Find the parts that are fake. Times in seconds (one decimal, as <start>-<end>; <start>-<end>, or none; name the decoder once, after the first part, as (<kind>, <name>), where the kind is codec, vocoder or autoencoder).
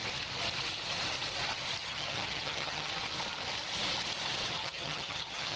1.8-2.9 (vocoder, HiFi-GAN); 4.6-5.6